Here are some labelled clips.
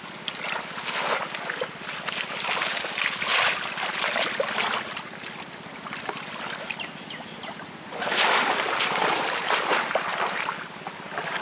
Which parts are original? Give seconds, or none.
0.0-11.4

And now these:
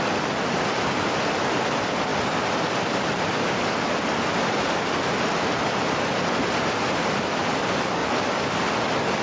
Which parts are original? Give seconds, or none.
0.0-9.2

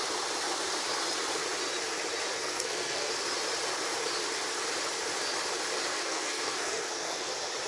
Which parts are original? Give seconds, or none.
0.0-2.4; 3.1-5.9; 7.3-7.7

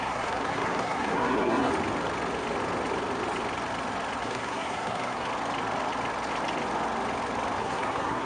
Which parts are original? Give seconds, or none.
1.7-4.2; 5.3-7.6